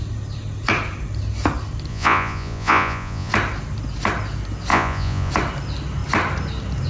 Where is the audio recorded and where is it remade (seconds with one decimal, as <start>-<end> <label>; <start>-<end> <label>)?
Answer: 0.0-1.9 recorded; 1.9-3.3 remade; 3.3-4.7 recorded; 4.7-5.3 remade; 5.3-6.9 recorded